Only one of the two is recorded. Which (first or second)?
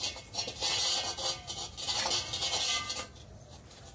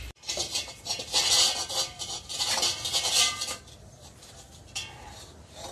first